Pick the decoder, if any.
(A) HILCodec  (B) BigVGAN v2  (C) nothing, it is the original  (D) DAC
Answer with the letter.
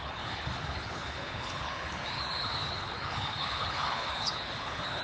A